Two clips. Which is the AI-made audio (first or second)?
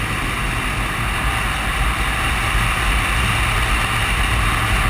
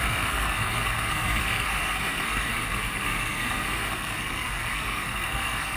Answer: second